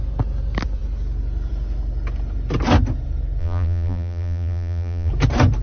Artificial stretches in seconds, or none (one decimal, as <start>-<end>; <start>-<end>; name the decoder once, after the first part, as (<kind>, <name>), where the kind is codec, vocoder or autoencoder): 3.4-5.1 (vocoder, BigVGAN v2)